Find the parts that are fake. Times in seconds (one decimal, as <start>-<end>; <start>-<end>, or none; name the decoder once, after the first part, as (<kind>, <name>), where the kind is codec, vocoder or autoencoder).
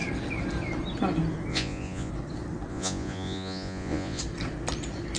1.5-2.1 (vocoder, Vocos); 2.7-4.2